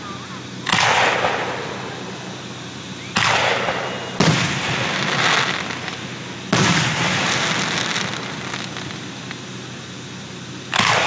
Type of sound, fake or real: real